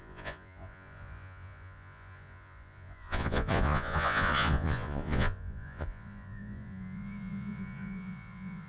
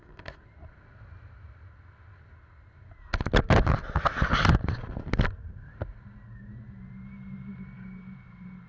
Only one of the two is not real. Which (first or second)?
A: first